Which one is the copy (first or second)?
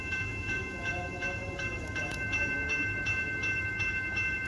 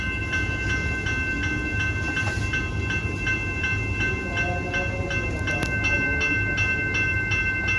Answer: first